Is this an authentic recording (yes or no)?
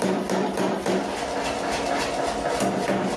yes